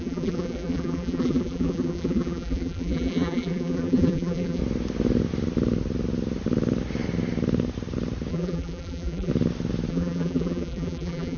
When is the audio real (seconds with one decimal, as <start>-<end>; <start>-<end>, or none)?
4.6-8.3; 9.3-9.9

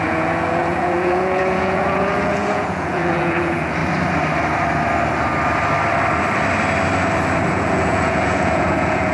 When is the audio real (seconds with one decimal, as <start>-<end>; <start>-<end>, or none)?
3.8-7.5

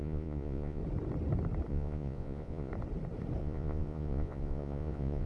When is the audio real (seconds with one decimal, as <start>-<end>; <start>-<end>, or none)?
0.8-1.7; 2.7-3.4

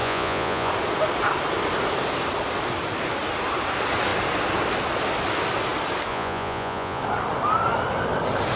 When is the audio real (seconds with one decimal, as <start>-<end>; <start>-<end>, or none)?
0.7-6.1; 7.0-8.6

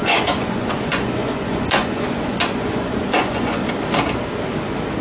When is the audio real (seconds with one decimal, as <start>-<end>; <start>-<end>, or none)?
3.6-5.0

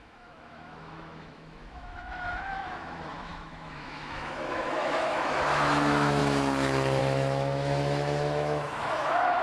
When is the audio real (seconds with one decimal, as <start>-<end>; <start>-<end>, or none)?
none

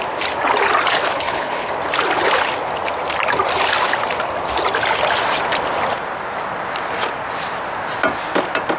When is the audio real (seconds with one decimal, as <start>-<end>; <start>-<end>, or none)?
0.0-1.1; 1.7-8.8